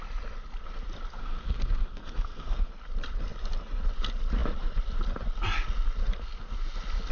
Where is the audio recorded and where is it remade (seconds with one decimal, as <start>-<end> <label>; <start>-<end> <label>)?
0.0-1.2 recorded; 1.2-2.7 remade; 2.7-7.1 recorded